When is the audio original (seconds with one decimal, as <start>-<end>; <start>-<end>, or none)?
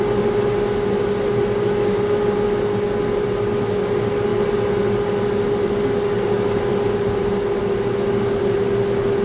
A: 0.0-9.2